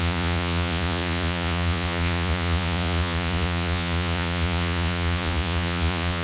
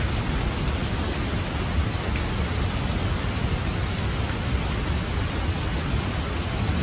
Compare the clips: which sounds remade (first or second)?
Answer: first